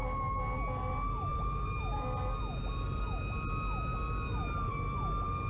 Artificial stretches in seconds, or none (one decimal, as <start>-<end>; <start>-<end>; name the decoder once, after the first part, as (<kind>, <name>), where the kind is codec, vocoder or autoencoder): 1.3-1.8 (vocoder, BigVGAN v2)